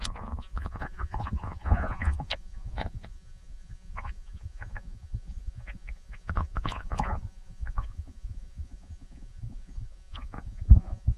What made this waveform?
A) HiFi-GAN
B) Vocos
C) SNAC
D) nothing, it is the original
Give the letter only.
B